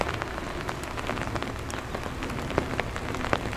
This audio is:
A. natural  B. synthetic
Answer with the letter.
A